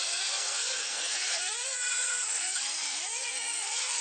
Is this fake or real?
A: fake